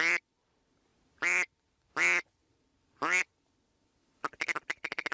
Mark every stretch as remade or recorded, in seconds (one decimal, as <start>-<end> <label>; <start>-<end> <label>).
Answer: 0.0-0.9 recorded; 0.9-1.9 remade; 1.9-2.4 recorded; 2.4-3.2 remade; 3.2-5.1 recorded